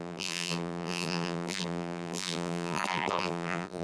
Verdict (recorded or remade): remade